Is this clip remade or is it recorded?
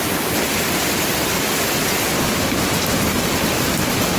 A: recorded